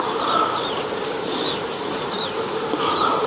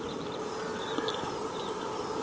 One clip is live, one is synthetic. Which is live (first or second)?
second